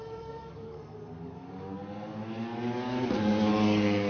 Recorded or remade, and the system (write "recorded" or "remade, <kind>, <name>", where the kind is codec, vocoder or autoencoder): remade, codec, DAC